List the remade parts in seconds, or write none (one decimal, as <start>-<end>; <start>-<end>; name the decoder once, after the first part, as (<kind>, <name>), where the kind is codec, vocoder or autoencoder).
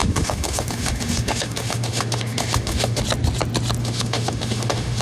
0.0-3.0 (autoencoder, DAC-VAE); 3.8-5.0